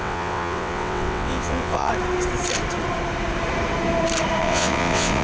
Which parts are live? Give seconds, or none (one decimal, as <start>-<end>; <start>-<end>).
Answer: 1.9-4.4